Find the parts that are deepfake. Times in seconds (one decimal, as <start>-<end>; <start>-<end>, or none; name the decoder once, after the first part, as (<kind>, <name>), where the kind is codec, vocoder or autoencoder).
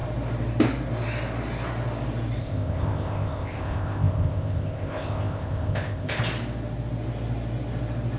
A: 2.4-6.2 (codec, ZipCodec)